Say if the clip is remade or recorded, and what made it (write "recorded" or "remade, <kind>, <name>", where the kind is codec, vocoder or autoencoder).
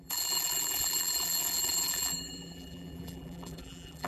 remade, vocoder, BigVGAN v2